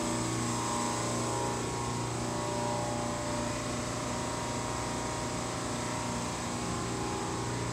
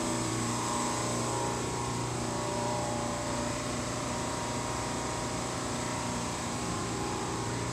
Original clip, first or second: first